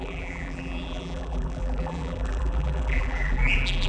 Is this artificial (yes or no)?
yes